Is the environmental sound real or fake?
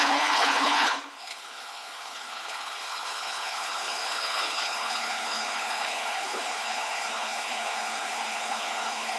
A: fake